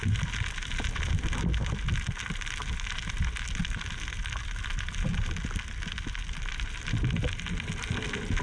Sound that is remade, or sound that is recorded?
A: recorded